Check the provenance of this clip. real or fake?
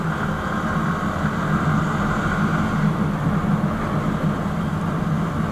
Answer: real